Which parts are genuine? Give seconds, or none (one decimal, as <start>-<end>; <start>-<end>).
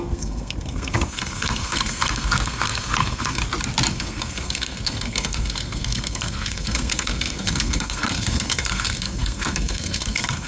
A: 3.4-3.9